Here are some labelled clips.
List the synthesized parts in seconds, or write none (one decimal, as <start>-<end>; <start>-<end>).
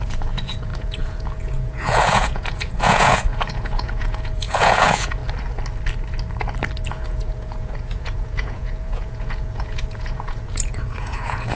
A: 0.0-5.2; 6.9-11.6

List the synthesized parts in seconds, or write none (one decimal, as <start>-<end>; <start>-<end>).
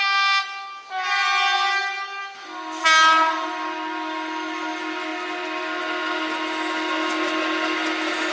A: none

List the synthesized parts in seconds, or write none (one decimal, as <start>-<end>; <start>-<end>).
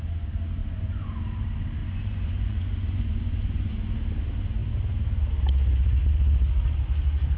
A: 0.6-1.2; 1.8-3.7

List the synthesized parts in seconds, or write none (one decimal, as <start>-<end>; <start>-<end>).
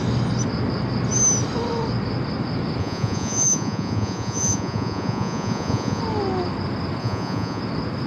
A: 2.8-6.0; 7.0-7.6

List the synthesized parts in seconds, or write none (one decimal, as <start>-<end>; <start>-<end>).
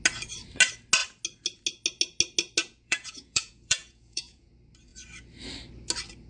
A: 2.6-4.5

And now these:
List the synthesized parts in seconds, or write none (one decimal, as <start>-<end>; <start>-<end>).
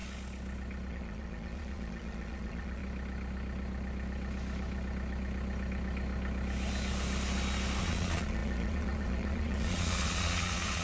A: 0.9-2.8; 7.8-10.8